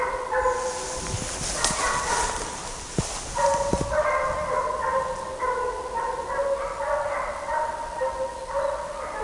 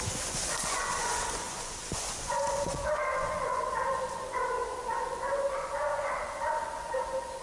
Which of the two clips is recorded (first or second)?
first